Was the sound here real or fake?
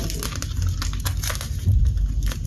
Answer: real